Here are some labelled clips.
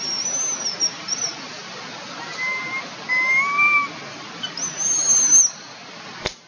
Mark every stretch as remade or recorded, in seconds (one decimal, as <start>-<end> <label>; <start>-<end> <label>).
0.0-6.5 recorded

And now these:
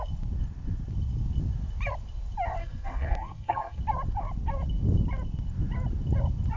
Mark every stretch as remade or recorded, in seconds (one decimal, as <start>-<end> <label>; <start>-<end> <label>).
0.0-2.6 recorded; 2.6-3.8 remade; 3.8-6.6 recorded

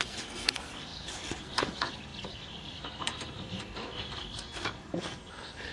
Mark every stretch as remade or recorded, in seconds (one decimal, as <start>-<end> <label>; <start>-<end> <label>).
0.0-5.7 remade

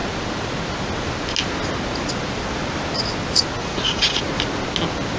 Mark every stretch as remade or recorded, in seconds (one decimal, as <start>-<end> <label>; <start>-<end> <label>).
0.0-3.6 recorded; 3.6-4.2 remade; 4.2-5.2 recorded

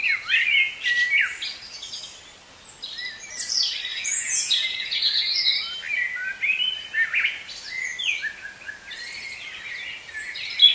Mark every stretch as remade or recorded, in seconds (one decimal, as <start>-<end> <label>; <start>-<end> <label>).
0.0-3.9 recorded; 3.9-5.5 remade; 5.5-10.7 recorded

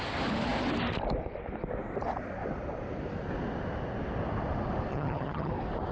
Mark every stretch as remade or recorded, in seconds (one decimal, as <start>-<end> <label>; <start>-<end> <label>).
0.0-4.9 recorded; 4.9-5.5 remade; 5.5-5.9 recorded